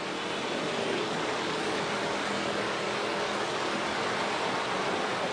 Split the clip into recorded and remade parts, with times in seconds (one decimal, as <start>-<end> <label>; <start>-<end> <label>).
0.0-0.8 recorded; 0.8-4.0 remade; 4.0-5.3 recorded